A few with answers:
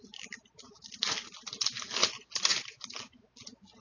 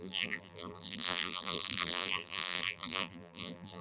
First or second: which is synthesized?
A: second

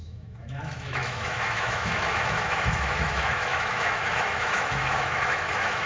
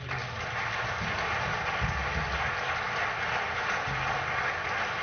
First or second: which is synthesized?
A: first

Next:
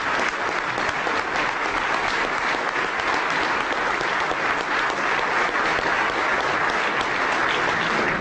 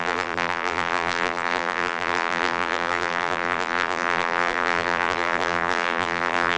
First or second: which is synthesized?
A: second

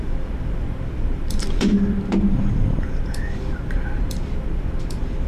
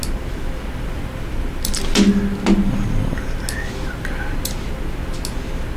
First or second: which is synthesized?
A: first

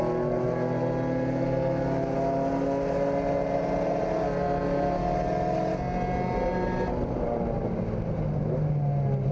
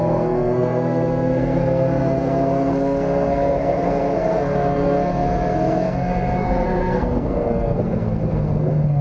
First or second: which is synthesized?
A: second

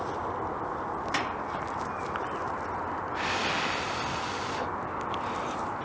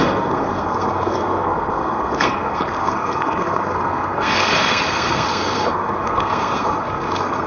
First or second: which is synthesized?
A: second